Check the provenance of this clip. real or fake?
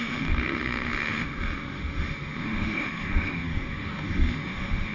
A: fake